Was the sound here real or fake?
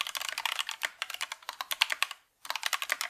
real